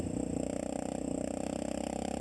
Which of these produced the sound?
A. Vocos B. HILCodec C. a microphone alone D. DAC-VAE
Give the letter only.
C